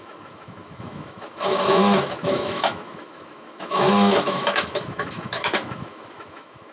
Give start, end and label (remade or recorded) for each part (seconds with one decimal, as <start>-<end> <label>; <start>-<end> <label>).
0.0-6.7 remade